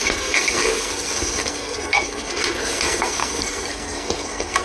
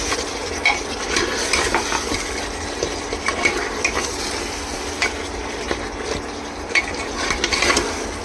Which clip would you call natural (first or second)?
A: second